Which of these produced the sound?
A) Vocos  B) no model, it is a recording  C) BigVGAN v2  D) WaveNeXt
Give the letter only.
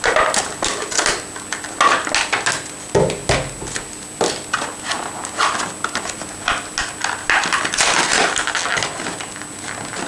B